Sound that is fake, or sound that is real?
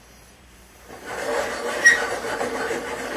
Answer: fake